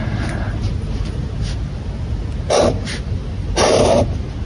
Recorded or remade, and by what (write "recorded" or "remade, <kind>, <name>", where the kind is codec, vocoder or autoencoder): recorded